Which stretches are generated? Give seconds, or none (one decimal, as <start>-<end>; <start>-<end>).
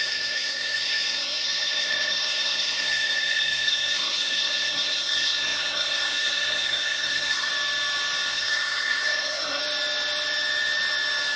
0.0-7.5; 8.3-9.6